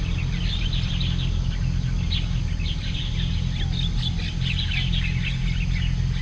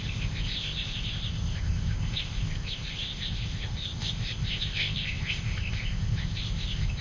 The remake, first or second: second